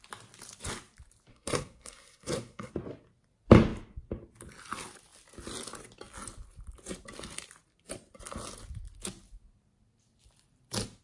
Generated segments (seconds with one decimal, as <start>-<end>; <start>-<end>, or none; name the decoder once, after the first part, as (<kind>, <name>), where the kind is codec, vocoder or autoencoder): 1.3-2.7 (codec, SNAC)